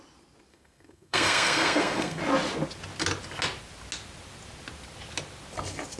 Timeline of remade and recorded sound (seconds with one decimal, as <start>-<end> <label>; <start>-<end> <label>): 0.0-0.5 recorded; 0.5-2.2 remade; 2.2-6.0 recorded